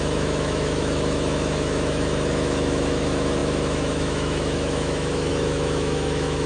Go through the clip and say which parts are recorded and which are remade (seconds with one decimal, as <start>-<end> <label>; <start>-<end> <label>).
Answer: 0.0-6.5 remade